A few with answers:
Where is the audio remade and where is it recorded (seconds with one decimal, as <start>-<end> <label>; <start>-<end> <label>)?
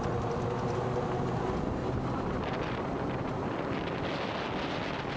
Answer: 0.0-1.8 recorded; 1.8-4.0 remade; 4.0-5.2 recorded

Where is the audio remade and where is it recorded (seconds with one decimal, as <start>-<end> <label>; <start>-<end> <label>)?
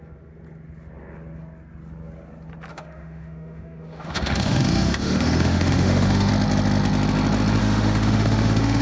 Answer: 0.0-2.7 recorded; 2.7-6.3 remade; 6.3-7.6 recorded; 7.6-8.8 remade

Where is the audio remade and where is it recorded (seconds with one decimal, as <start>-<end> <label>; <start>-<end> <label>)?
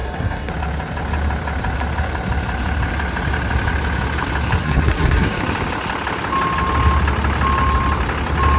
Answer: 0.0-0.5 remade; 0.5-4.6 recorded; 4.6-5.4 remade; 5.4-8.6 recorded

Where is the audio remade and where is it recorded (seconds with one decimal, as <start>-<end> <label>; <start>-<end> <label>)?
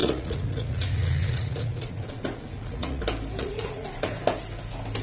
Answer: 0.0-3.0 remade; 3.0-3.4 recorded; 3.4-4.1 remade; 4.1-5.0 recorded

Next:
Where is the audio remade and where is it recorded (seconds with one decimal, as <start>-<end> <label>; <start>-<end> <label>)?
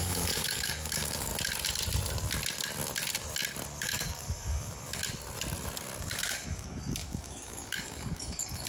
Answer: 0.0-1.3 remade; 1.3-3.8 recorded; 3.8-5.0 remade; 5.0-6.0 recorded; 6.0-8.7 remade